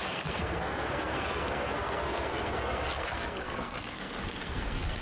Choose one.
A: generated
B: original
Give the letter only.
A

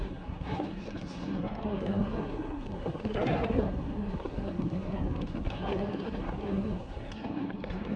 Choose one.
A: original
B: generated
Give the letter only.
B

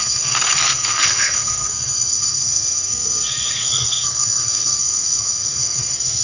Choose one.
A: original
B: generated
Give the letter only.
B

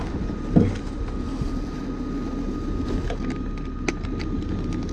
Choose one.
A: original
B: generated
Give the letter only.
A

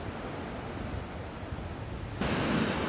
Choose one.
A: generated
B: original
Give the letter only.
B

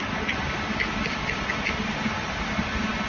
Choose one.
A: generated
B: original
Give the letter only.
B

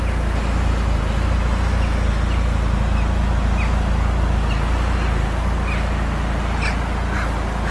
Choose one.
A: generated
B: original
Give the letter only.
B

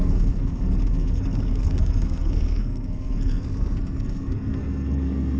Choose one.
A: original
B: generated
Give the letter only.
B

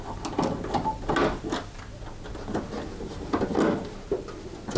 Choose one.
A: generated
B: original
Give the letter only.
B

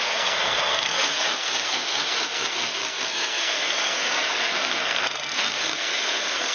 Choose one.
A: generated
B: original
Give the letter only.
A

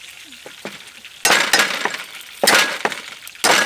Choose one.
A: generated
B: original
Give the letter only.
B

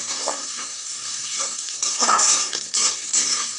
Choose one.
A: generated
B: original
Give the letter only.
A